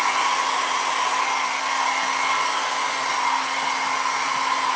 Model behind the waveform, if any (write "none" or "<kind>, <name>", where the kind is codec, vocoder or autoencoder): none